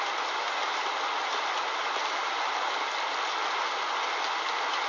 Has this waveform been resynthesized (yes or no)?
no